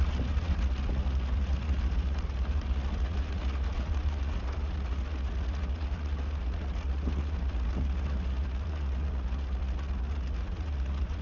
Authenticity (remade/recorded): remade